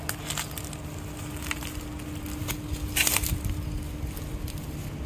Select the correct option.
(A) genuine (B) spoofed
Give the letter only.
A